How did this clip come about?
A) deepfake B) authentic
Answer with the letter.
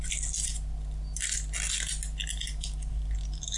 B